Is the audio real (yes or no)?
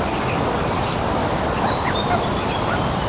yes